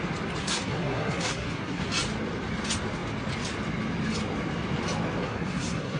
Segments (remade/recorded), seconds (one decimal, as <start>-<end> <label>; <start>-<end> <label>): 0.0-0.4 recorded; 0.4-1.8 remade; 1.8-5.2 recorded; 5.2-6.0 remade